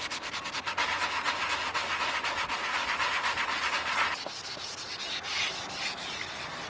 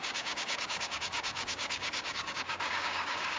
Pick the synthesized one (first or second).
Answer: second